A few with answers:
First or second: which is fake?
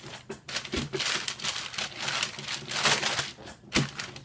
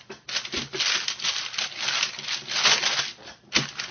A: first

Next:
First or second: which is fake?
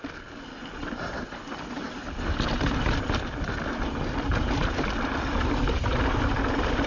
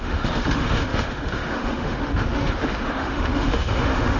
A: second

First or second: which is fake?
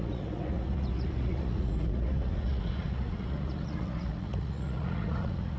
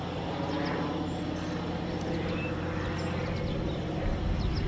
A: first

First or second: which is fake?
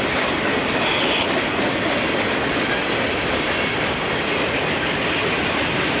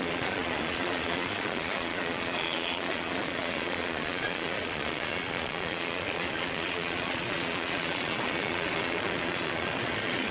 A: second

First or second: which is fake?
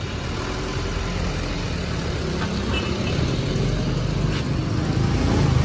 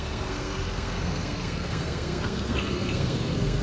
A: second